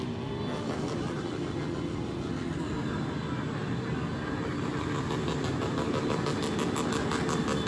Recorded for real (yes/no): yes